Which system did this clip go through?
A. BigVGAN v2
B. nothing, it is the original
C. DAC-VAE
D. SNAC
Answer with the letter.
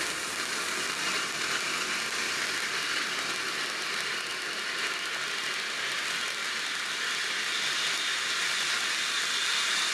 B